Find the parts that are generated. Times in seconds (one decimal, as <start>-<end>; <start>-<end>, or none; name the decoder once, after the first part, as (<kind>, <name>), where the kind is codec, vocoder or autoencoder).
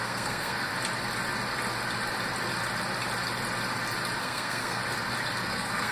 0.0-0.7 (codec, SNAC); 4.2-4.8; 5.4-5.9